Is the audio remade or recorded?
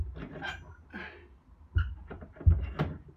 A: recorded